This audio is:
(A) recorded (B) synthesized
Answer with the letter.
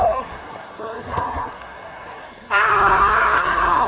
B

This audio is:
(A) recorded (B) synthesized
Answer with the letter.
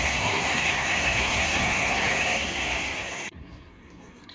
B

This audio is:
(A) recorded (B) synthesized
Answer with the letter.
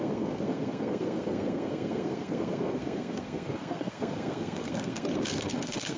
B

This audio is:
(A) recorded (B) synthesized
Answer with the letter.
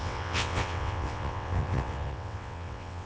B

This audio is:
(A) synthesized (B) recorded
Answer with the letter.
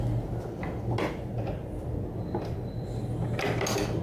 B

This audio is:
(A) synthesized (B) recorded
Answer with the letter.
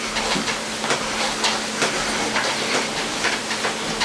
B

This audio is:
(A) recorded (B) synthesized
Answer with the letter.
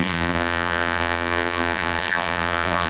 B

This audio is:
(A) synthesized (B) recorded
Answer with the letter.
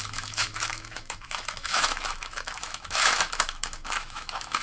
A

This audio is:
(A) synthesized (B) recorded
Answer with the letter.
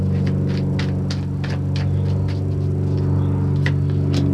B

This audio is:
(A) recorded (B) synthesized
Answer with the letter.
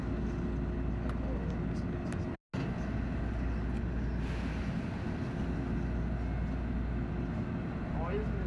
A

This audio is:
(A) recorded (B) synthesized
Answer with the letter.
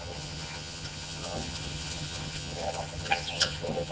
B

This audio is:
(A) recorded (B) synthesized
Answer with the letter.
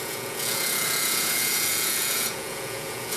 B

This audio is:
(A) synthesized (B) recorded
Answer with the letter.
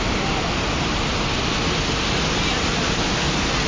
B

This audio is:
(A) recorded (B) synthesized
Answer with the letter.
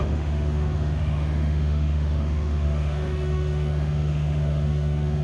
B